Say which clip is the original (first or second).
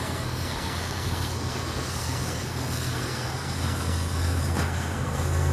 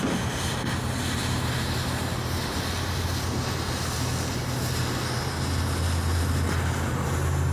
second